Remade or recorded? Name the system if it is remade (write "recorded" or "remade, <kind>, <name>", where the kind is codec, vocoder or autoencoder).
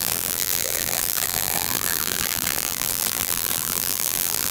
remade, vocoder, BigVGAN v2